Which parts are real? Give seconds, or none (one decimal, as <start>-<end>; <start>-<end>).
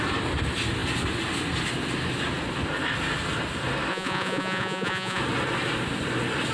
0.0-3.9; 5.2-6.5